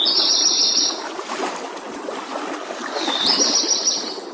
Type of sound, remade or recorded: recorded